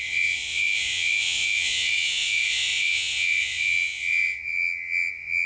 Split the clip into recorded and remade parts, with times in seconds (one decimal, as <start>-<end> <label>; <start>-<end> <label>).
0.0-5.5 remade